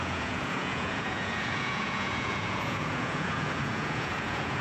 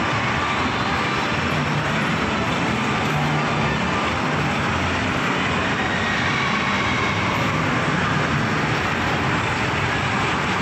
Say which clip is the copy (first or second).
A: first